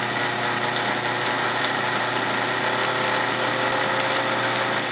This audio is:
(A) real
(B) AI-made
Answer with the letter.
A